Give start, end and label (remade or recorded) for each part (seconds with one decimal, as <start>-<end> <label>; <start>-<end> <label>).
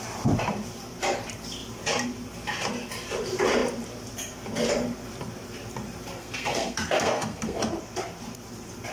0.0-6.2 recorded; 6.2-7.6 remade; 7.6-8.9 recorded